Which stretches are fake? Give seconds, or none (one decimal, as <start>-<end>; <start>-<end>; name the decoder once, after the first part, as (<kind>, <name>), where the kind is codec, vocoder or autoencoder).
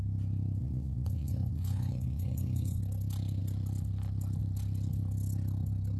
0.6-2.8 (vocoder, Vocos)